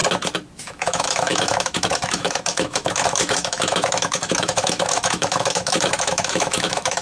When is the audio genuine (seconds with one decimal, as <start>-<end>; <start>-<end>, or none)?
0.0-0.6